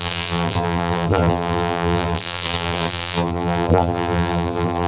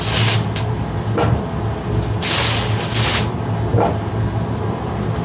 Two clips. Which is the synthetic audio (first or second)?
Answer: first